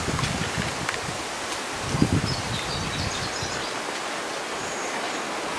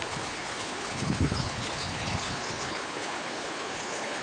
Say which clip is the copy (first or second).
second